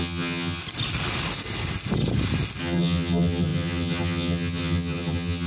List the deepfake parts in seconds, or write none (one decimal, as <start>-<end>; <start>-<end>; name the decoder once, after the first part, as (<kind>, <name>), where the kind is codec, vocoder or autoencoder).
0.0-0.6 (vocoder, HiFi-GAN); 2.6-5.5

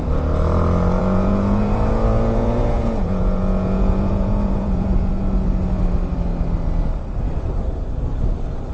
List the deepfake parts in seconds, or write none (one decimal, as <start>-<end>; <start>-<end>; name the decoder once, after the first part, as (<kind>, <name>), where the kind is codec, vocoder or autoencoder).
1.0-5.1 (vocoder, Vocos)

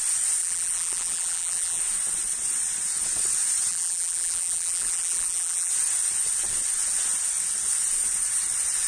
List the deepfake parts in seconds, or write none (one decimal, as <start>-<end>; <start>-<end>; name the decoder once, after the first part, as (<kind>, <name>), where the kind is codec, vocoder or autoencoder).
0.4-1.8 (vocoder, BigVGAN v2); 3.7-5.7

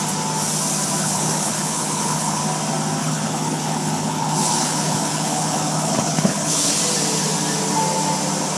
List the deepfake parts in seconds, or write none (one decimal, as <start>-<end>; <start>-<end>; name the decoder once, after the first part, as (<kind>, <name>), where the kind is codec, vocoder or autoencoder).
1.0-2.4 (codec, HILCodec); 3.0-6.8

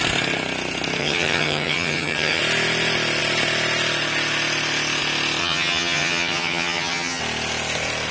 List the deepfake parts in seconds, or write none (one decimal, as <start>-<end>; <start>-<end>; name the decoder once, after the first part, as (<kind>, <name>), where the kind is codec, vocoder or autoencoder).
1.0-2.4 (vocoder, HiFi-GAN); 5.4-7.2

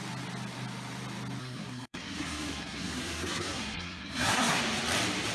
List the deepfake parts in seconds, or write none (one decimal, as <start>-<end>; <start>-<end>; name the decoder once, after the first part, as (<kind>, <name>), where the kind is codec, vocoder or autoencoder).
1.4-4.6 (codec, SNAC)

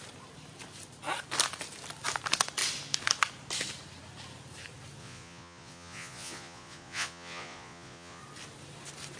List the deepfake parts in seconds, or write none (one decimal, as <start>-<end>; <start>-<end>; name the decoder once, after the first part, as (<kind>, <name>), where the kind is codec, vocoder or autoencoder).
5.0-8.2 (vocoder, Vocos)